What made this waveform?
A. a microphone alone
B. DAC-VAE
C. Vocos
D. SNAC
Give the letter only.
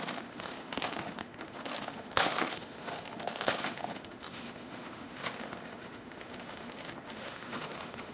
B